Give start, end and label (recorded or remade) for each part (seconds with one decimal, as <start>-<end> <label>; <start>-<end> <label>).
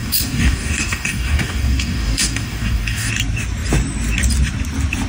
0.0-3.1 remade; 3.1-5.1 recorded